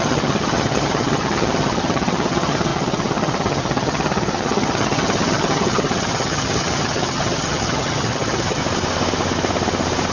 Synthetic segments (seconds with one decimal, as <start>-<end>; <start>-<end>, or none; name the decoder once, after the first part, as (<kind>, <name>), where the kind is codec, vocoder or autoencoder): 0.0-8.6 (vocoder, HiFi-GAN)